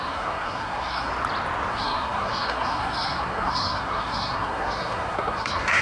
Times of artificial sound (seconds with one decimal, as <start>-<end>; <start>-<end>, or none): 0.0-1.1; 1.7-5.8